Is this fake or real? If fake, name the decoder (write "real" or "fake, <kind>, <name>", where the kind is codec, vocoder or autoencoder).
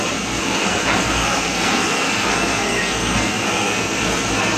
fake, codec, SNAC